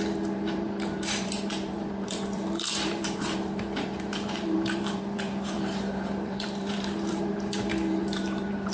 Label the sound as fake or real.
fake